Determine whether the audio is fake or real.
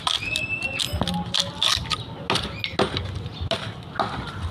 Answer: real